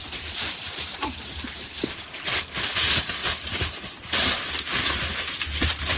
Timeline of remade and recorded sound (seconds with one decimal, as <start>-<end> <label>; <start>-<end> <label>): 0.0-2.4 remade; 2.4-6.0 recorded